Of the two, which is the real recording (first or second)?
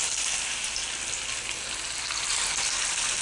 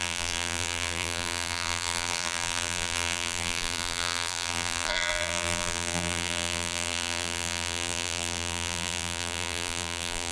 first